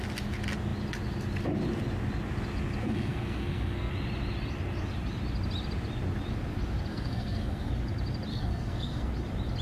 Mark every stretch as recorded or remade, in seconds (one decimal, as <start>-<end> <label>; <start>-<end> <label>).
0.0-2.8 recorded; 2.8-3.9 remade; 3.9-6.9 recorded; 6.9-7.7 remade; 7.7-8.3 recorded; 8.3-9.1 remade; 9.1-9.6 recorded